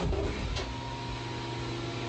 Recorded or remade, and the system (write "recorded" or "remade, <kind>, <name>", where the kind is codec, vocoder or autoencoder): recorded